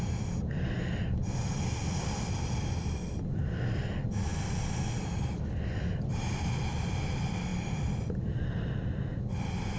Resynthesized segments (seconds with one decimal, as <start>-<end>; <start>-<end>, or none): 1.8-3.8; 7.5-9.4